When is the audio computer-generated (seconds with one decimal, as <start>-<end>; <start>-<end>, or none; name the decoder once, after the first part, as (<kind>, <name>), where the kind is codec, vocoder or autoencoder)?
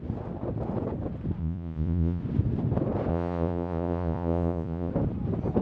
1.4-2.2 (vocoder, Vocos); 3.1-4.9